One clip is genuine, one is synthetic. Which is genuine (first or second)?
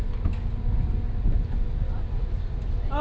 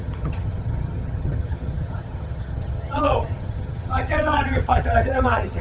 first